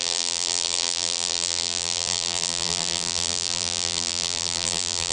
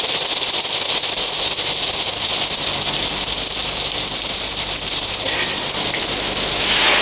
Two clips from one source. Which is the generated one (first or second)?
first